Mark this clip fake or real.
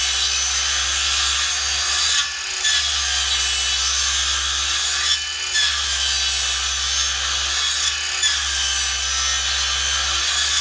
real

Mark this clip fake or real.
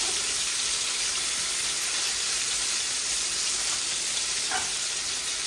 real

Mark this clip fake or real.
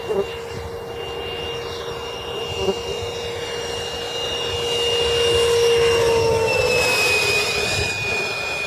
real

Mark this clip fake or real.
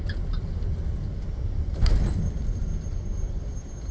fake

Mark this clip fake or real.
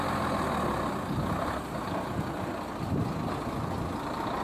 real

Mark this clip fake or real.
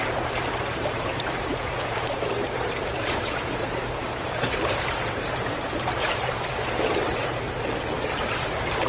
fake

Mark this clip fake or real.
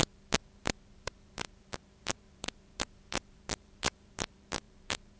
fake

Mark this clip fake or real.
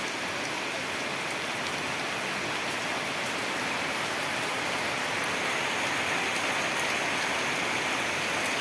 real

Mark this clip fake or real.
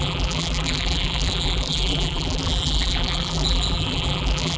fake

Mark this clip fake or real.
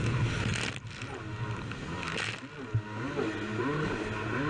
real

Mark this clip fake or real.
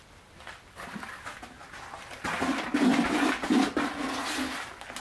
real